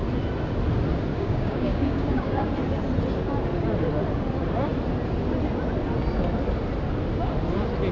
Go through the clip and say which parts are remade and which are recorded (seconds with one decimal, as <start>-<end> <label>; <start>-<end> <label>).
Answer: 0.0-1.1 recorded; 1.1-2.5 remade; 2.5-7.9 recorded

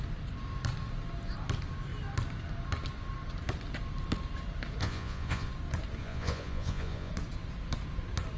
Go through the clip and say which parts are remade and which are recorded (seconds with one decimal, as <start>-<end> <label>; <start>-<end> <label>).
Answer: 0.0-4.8 recorded; 4.8-5.5 remade; 5.5-6.0 recorded; 6.0-7.1 remade; 7.1-8.4 recorded